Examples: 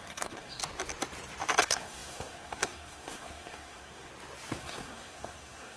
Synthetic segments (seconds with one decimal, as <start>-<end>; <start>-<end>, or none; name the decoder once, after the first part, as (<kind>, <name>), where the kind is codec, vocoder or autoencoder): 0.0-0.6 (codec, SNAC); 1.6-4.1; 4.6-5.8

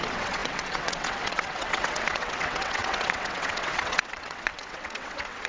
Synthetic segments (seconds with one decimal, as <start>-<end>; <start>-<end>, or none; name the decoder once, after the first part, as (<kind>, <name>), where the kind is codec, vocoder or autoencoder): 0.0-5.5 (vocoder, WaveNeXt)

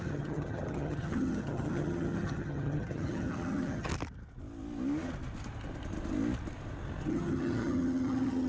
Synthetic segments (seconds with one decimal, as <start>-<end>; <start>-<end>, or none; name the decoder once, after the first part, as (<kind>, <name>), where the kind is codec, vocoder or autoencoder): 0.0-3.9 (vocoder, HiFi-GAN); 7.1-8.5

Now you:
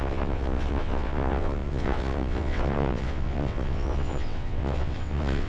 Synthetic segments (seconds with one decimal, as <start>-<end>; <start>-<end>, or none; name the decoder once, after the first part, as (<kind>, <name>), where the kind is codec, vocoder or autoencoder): 0.0-5.5 (vocoder, WaveNeXt)

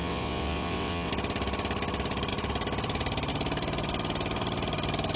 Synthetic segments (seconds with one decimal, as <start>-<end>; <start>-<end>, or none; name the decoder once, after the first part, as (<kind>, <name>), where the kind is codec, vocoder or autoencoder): 0.0-1.1 (vocoder, WaveNeXt)

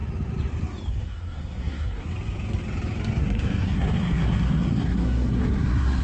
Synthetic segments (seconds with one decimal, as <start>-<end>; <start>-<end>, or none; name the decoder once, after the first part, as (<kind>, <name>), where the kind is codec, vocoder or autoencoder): 0.9-2.1 (codec, SNAC); 3.2-6.0